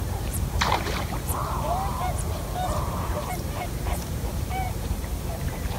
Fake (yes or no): yes